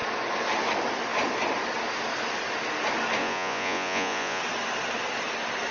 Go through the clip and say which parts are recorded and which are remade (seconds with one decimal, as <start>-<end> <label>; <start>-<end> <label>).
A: 0.0-3.2 recorded; 3.2-4.4 remade; 4.4-5.7 recorded